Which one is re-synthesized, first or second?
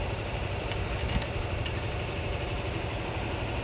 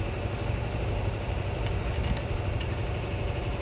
first